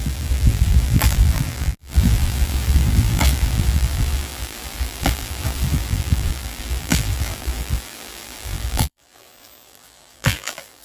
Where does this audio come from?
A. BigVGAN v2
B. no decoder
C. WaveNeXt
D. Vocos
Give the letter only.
A